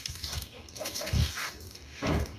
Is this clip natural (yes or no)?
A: no